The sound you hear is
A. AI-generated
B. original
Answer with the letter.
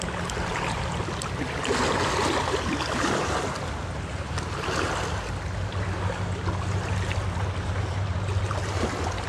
B